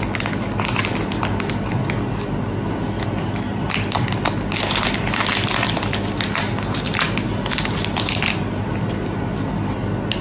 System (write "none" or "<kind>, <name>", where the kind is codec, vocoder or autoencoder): none